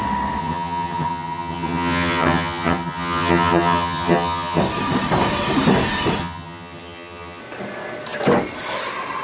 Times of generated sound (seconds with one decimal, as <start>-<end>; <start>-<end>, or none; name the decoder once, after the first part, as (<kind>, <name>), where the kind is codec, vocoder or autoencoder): 0.4-4.6 (vocoder, HiFi-GAN); 6.2-7.4